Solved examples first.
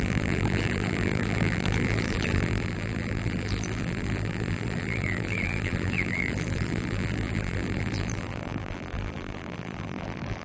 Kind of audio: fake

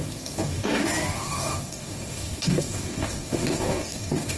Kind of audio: fake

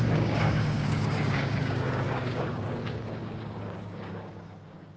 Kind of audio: fake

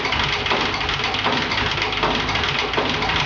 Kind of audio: real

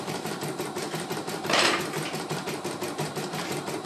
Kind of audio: fake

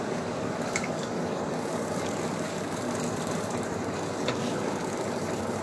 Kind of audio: fake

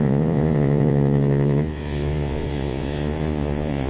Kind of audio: fake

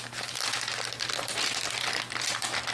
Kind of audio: real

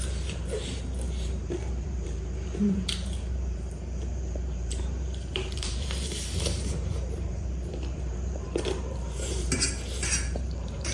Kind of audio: fake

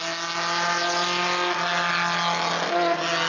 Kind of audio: real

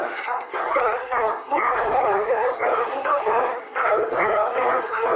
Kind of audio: fake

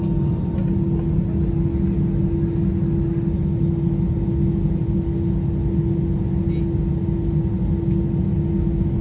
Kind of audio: real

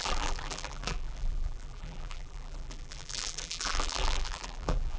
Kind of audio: fake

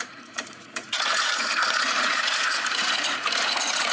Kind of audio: fake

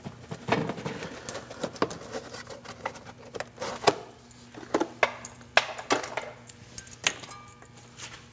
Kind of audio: real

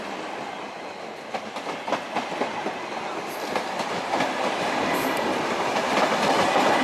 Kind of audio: real